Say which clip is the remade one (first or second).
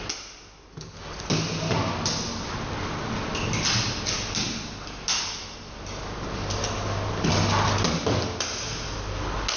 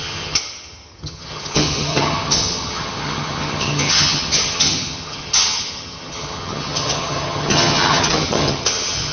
second